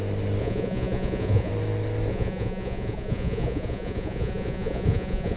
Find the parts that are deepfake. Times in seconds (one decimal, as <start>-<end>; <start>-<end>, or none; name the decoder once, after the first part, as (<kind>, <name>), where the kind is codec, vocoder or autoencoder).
0.4-1.5 (vocoder, Vocos); 2.1-5.4